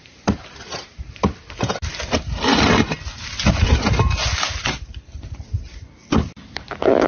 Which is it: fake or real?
real